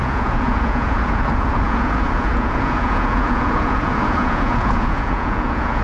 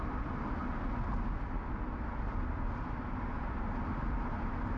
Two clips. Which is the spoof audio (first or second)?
first